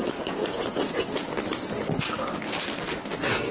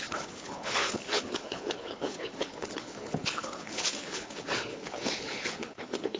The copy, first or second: second